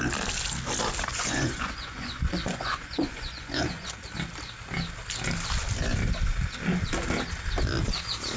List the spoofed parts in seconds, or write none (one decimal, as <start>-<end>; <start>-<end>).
1.1-3.9